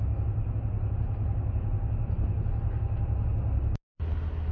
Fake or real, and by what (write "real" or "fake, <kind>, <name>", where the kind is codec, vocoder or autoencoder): real